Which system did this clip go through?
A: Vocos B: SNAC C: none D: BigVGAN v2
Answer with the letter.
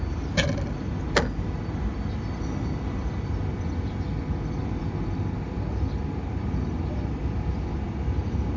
C